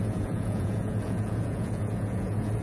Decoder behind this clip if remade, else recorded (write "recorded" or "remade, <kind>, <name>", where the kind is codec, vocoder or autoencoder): remade, vocoder, Vocos